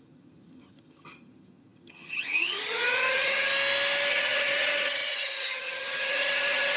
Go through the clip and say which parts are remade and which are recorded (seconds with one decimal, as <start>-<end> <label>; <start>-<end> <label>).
0.0-3.5 remade; 3.5-4.1 recorded; 4.1-6.8 remade